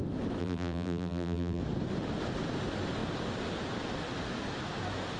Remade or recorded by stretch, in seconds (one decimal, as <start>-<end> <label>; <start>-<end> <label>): 0.0-0.4 recorded; 0.4-1.6 remade; 1.6-5.2 recorded